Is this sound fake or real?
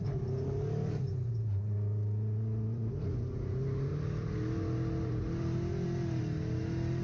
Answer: real